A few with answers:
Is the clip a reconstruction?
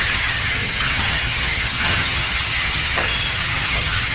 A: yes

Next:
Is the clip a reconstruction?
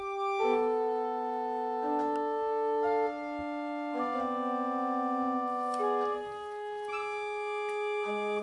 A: no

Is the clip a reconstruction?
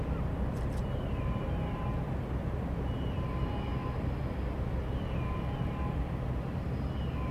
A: no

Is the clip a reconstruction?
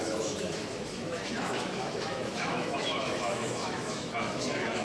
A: yes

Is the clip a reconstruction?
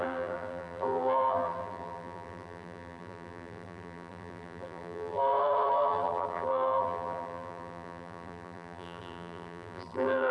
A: yes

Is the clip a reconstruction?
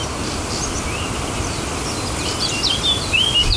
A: no